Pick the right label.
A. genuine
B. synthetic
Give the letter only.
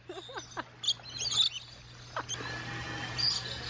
A